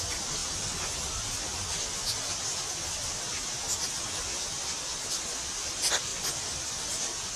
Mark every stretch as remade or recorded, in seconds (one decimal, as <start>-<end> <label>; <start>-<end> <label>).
0.0-6.1 recorded; 6.1-7.4 remade